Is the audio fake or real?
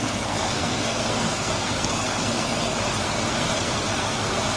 fake